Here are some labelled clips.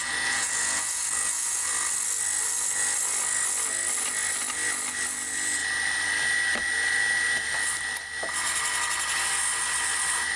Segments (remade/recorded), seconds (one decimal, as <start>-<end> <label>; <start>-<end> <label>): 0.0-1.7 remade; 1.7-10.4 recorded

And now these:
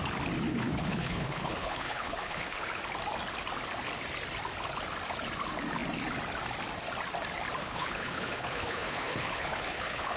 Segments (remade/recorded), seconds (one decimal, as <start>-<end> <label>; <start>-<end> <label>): 0.0-0.5 recorded; 0.5-2.8 remade; 2.8-7.6 recorded; 7.6-10.2 remade

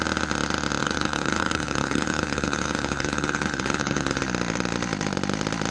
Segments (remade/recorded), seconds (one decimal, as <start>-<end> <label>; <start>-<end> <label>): 0.0-0.8 recorded; 0.8-4.2 remade; 4.2-5.7 recorded

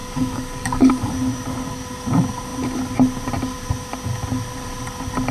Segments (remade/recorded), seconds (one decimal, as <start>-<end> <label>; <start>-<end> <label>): 0.0-1.1 remade; 1.1-5.3 recorded

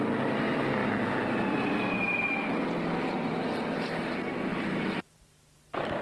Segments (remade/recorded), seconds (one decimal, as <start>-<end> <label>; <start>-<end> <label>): 0.0-4.5 recorded; 4.5-6.0 remade

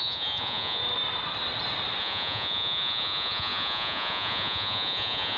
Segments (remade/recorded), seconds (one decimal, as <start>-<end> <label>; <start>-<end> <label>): 0.0-0.8 remade; 0.8-2.0 recorded; 2.0-5.4 remade

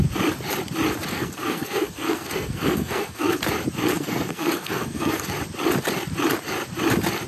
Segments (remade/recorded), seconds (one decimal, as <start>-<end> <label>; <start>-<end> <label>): 0.0-1.1 recorded; 1.1-3.4 remade; 3.4-3.9 recorded; 3.9-5.3 remade; 5.3-7.3 recorded

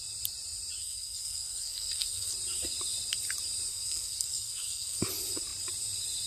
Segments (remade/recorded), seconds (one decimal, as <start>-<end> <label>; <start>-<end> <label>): 0.0-0.8 recorded; 0.8-2.3 remade; 2.3-3.7 recorded; 3.7-5.0 remade; 5.0-6.3 recorded